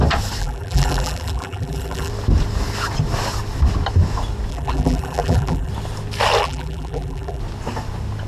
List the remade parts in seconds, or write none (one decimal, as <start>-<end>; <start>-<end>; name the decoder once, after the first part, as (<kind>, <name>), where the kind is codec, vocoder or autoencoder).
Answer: 0.4-2.1 (vocoder, BigVGAN v2); 4.5-5.7; 6.4-7.4